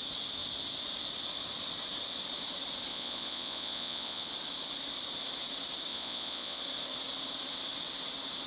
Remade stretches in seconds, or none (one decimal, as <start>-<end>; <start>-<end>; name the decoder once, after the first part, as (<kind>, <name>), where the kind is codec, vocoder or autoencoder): 2.9-4.3 (vocoder, Vocos); 5.9-6.6